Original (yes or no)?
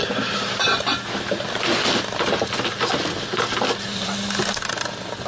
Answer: yes